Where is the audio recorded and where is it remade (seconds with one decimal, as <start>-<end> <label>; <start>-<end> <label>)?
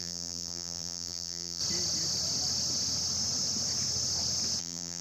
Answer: 0.0-1.6 remade; 1.6-4.6 recorded; 4.6-5.0 remade